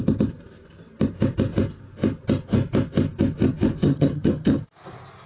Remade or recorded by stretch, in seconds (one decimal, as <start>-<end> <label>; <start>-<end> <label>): 0.0-3.8 recorded; 3.8-4.6 remade; 4.6-5.3 recorded